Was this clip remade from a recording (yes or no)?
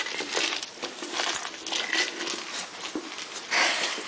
no